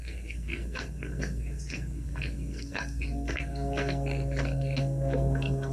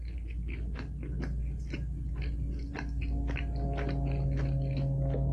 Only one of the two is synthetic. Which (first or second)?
first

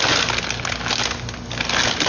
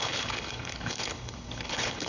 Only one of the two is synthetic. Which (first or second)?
second